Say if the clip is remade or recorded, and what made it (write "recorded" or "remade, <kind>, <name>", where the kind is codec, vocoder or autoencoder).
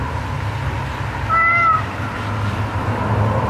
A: recorded